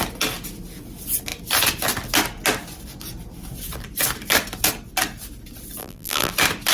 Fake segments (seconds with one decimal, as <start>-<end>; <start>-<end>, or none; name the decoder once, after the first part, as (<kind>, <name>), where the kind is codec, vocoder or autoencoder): 5.8-6.3 (vocoder, BigVGAN v2)